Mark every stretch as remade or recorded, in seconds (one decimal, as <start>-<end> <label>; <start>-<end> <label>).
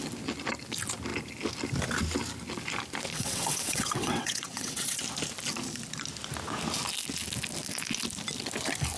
0.0-3.1 recorded; 3.1-5.0 remade; 5.0-9.0 recorded